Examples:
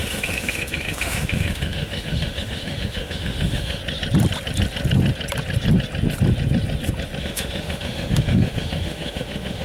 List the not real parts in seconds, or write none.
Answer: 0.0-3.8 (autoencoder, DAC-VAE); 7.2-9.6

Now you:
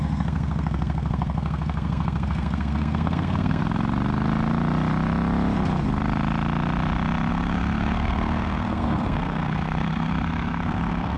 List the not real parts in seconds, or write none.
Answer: 0.0-3.6 (codec, SNAC); 7.3-11.2